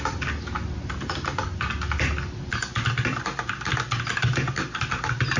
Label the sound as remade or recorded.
recorded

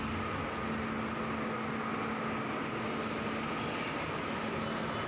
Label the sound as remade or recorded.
recorded